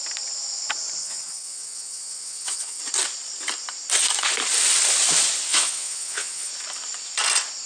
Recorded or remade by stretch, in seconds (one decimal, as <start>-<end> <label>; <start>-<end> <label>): 0.0-1.0 recorded; 1.0-2.8 remade; 2.8-5.5 recorded; 5.5-6.5 remade; 6.5-7.7 recorded